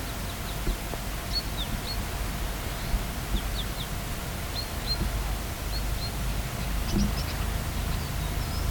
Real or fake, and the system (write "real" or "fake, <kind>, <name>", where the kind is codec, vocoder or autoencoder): real